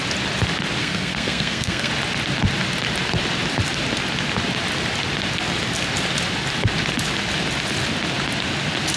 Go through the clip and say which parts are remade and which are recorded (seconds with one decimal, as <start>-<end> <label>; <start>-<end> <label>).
0.0-0.8 recorded; 0.8-1.9 remade; 1.9-9.0 recorded